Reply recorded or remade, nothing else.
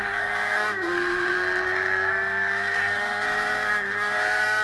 remade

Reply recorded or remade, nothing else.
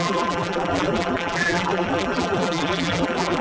remade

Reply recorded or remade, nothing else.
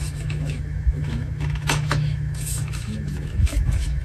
remade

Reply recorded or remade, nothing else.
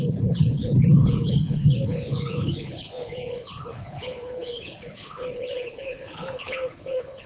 remade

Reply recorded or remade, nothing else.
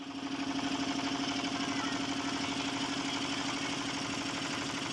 recorded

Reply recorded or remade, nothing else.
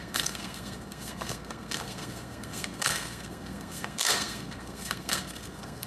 remade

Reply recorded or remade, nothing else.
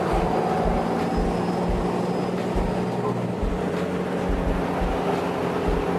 recorded